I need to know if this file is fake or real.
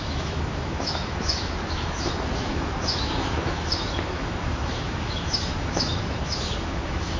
fake